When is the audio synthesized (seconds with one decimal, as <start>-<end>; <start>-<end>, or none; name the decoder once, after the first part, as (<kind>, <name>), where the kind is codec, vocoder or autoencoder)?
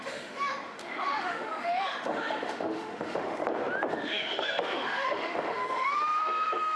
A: 0.0-3.4 (autoencoder, DAC-VAE); 3.9-6.8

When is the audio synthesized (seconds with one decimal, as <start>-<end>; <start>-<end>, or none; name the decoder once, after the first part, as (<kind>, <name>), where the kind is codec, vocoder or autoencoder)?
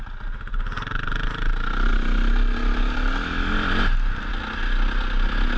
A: none